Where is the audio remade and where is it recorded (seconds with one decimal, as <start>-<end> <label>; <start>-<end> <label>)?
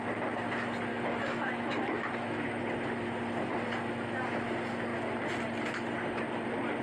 0.0-0.9 recorded; 0.9-2.6 remade; 2.6-6.8 recorded